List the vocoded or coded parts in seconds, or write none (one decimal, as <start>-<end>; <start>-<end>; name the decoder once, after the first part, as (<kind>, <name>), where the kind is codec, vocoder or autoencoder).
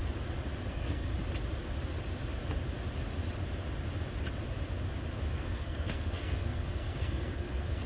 0.7-1.1 (codec, SNAC); 5.3-7.9